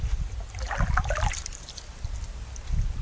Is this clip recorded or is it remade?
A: recorded